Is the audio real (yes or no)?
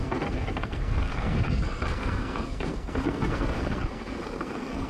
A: no